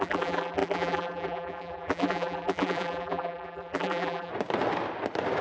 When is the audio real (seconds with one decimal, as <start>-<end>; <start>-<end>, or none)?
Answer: 4.3-5.4